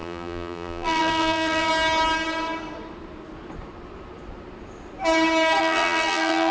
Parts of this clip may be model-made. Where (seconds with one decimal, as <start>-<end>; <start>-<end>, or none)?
0.0-1.7; 5.6-6.5